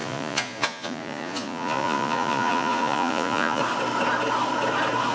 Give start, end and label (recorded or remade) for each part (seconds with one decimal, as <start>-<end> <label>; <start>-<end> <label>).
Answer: 0.0-3.6 remade; 3.6-5.1 recorded